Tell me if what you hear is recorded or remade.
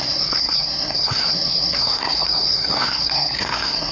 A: remade